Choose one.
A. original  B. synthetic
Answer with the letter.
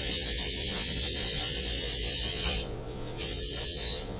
B